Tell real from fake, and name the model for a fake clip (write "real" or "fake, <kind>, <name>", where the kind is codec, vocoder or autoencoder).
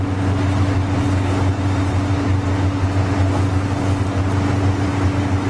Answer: real